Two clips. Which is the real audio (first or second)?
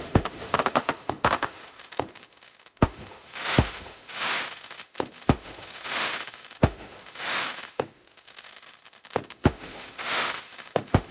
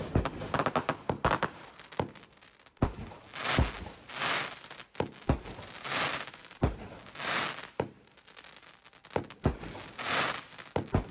second